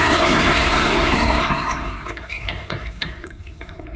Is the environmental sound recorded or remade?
remade